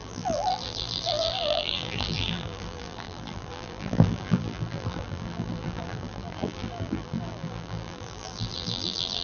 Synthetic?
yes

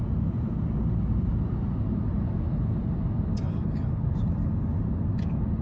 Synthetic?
no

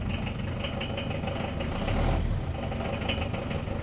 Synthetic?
no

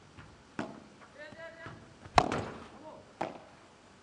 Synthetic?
no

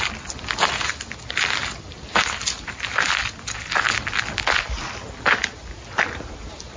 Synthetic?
no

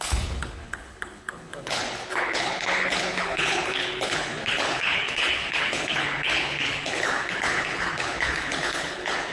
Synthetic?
yes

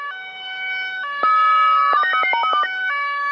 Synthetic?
yes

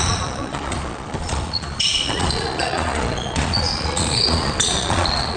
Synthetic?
yes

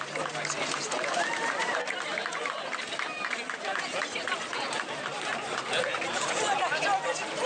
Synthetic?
no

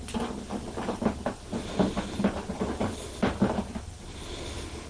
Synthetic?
no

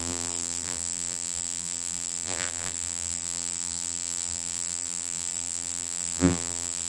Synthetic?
yes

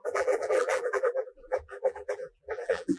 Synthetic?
yes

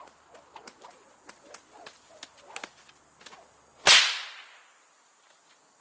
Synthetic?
no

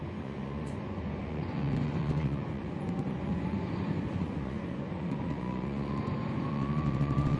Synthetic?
yes